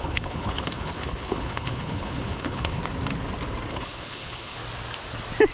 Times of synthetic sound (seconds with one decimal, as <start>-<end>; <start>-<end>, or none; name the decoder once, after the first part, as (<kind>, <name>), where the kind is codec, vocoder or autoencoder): 0.0-2.8 (codec, HILCodec); 3.7-4.6